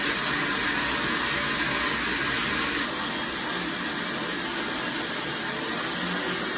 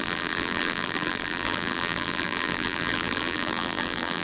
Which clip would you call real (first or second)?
first